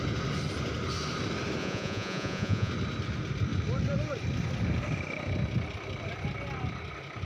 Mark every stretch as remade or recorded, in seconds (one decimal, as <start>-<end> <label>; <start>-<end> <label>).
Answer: 0.0-1.6 recorded; 1.6-2.7 remade; 2.7-7.3 recorded